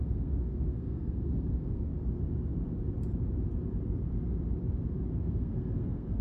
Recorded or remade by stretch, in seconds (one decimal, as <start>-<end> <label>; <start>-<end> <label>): 0.0-1.9 remade; 1.9-5.2 recorded; 5.2-6.2 remade